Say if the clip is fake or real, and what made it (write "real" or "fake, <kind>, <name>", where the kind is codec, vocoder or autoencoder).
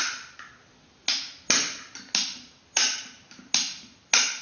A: real